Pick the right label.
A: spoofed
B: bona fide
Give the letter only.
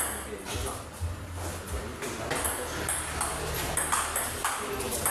B